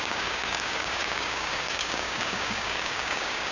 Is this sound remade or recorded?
remade